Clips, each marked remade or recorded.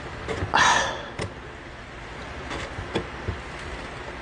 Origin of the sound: remade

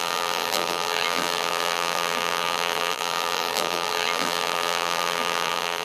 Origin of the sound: remade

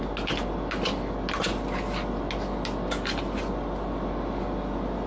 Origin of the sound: recorded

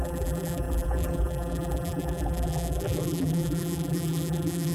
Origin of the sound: remade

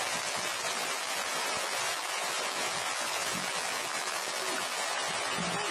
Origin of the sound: remade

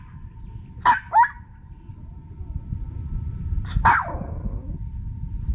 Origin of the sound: recorded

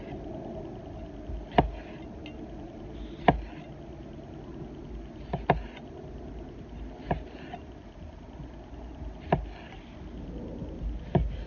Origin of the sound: recorded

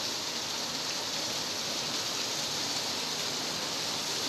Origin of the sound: recorded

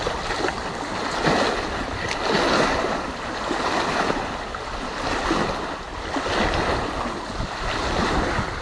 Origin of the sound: recorded